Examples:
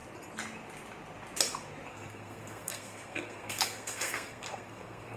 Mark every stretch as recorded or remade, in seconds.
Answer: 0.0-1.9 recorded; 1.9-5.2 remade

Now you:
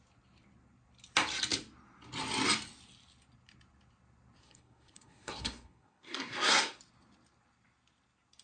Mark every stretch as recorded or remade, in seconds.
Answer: 0.0-4.4 recorded; 4.4-6.8 remade; 6.8-8.4 recorded

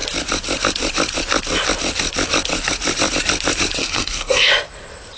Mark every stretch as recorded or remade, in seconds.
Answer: 0.0-3.8 recorded; 3.8-4.5 remade; 4.5-5.2 recorded

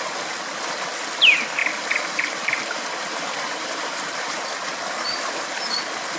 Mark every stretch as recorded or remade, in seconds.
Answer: 0.0-1.6 recorded; 1.6-4.4 remade; 4.4-6.2 recorded

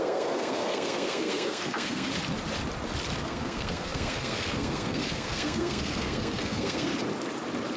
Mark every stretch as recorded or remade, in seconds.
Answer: 0.0-2.1 remade; 2.1-3.2 recorded; 3.2-6.9 remade; 6.9-7.8 recorded

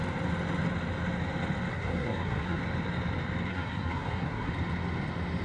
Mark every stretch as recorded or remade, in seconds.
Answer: 0.0-1.7 recorded; 1.7-2.6 remade; 2.6-3.5 recorded; 3.5-4.5 remade; 4.5-5.4 recorded

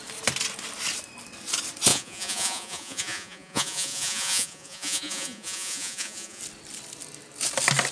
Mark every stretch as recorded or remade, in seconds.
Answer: 0.0-1.9 recorded; 1.9-6.4 remade; 6.4-7.9 recorded